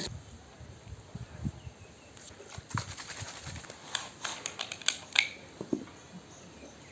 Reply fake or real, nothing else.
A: real